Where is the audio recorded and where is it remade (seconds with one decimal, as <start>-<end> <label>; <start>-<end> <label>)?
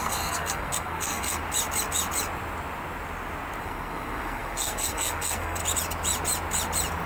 0.0-1.4 remade; 1.4-3.6 recorded; 3.6-5.6 remade; 5.6-7.1 recorded